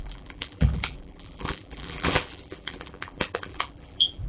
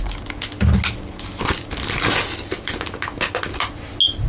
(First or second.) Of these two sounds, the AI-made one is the first